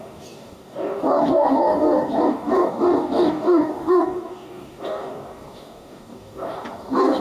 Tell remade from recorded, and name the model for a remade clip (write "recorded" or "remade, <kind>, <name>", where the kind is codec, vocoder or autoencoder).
remade, codec, DAC